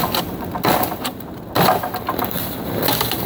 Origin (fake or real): real